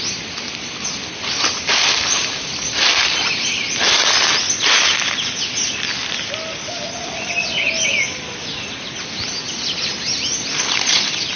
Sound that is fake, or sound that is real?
real